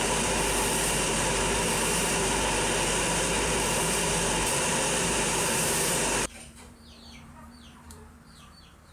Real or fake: fake